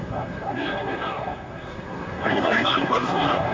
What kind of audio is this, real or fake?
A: fake